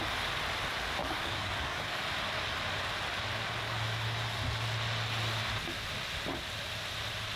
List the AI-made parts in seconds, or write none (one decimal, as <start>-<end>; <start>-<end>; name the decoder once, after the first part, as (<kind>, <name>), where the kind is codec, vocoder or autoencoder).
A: 1.0-2.0 (codec, DAC)